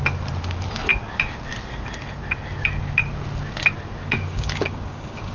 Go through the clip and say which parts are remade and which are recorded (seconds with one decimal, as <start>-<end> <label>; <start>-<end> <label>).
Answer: 0.0-4.0 recorded; 4.0-5.3 remade